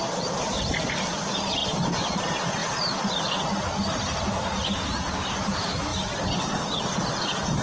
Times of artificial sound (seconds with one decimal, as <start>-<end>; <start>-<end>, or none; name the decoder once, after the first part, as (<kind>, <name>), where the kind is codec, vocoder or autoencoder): none